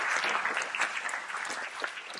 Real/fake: real